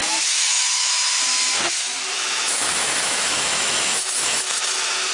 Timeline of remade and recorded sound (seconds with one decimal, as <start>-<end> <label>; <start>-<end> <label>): 0.0-1.2 remade; 1.2-1.8 recorded; 1.8-5.1 remade